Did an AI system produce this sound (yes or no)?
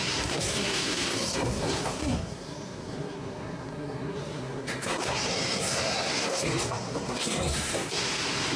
yes